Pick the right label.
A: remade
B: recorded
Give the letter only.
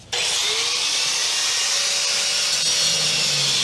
B